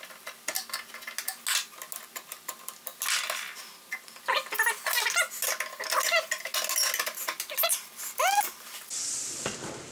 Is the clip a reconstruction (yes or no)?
no